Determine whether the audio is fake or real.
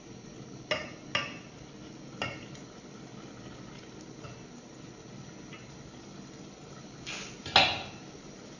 real